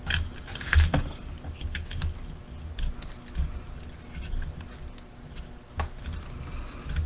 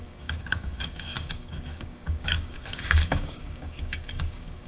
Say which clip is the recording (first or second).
first